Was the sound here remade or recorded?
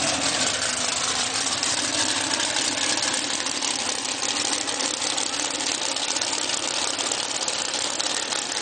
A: recorded